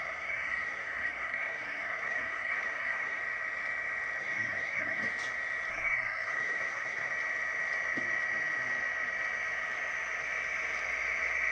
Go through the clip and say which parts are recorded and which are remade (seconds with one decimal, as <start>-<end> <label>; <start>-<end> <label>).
0.0-3.2 remade; 3.2-4.2 recorded; 4.2-5.1 remade; 5.1-5.7 recorded; 5.7-7.1 remade; 7.1-11.5 recorded